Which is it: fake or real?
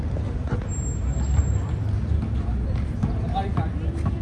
real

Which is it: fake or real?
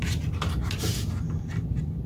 real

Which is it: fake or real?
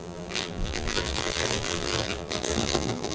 fake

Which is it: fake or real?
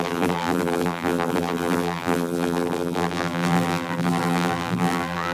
fake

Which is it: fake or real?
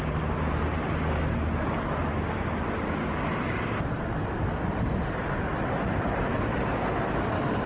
real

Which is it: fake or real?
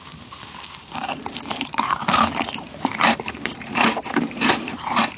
fake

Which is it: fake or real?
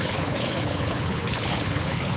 fake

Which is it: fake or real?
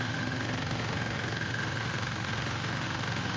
fake